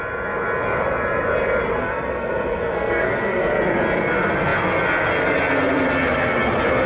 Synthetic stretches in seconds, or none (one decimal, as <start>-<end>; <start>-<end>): 1.8-3.5